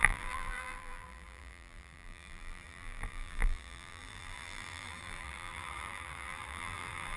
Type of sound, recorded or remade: remade